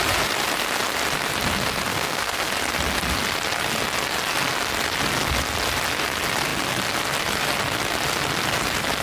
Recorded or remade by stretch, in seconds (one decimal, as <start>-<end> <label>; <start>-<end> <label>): 0.0-1.9 recorded; 1.9-2.5 remade; 2.5-9.0 recorded